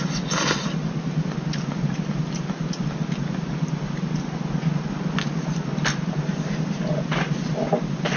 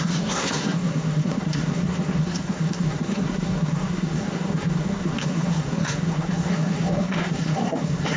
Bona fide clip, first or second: first